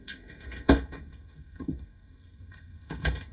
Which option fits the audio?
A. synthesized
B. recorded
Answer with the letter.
A